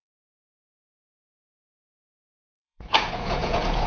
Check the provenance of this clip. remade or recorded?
remade